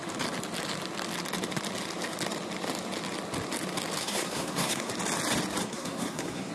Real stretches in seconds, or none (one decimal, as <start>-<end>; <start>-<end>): 0.0-4.0; 4.9-5.6